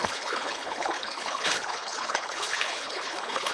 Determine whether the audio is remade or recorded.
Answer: remade